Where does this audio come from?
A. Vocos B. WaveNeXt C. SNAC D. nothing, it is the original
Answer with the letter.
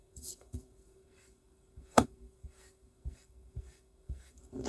C